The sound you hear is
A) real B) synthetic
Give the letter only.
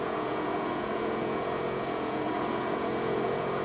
B